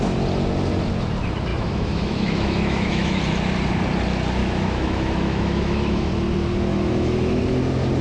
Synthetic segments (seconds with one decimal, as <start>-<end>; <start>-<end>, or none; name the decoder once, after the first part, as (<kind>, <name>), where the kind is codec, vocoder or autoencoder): 1.5-3.2 (autoencoder, DAC-VAE); 4.4-6.1; 6.7-7.4

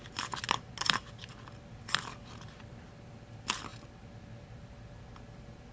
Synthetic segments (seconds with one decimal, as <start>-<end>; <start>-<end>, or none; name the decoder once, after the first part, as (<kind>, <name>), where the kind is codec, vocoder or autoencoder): none

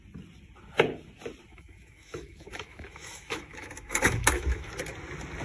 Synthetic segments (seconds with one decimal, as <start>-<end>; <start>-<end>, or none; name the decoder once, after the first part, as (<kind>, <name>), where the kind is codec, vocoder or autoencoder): 1.5-4.7 (autoencoder, DAC-VAE)

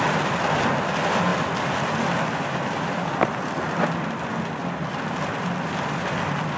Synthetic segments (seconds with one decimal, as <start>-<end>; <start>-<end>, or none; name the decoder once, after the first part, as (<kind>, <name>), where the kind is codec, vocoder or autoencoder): none

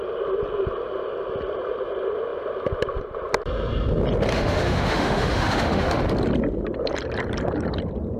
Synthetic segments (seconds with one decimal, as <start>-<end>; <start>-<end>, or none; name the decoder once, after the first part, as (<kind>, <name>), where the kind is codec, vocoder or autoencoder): 4.3-6.0 (autoencoder, DAC-VAE)

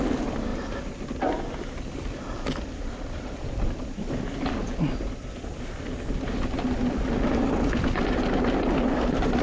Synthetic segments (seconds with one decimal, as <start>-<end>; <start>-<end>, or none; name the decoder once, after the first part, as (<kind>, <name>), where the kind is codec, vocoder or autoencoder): none

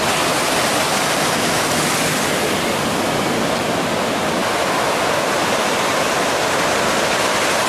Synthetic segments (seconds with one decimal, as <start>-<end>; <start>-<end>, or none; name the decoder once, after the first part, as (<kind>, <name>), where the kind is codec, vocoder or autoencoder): none

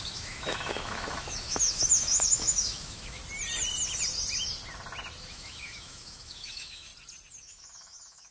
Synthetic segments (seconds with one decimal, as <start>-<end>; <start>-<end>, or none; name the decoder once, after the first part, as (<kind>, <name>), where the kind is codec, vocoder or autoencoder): 0.0-3.2 (autoencoder, DAC-VAE); 5.2-6.9; 7.4-8.3